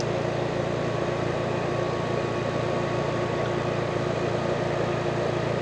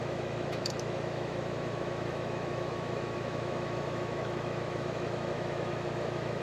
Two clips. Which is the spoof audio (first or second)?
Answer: second